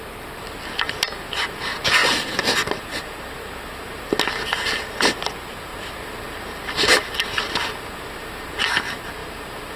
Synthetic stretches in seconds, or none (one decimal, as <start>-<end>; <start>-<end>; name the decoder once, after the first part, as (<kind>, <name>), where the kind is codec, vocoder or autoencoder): 2.0-2.8 (vocoder, BigVGAN v2); 9.2-9.8